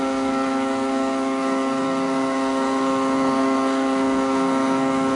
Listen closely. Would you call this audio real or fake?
fake